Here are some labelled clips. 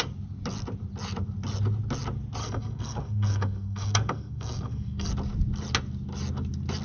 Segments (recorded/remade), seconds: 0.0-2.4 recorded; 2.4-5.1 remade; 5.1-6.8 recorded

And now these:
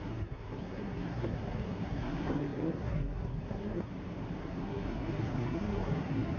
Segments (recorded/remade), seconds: 0.0-3.9 remade; 3.9-4.4 recorded; 4.4-6.4 remade

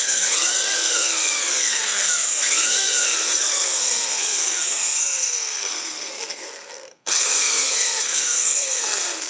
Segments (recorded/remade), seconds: 0.0-9.3 remade

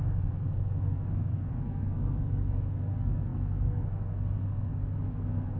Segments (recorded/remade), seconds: 0.0-5.6 remade

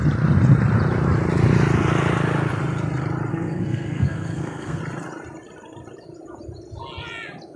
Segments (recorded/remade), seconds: 0.0-3.3 recorded; 3.3-4.8 remade; 4.8-7.6 recorded

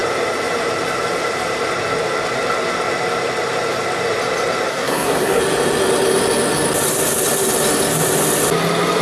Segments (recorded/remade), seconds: 0.0-4.7 recorded; 4.7-5.4 remade; 5.4-9.0 recorded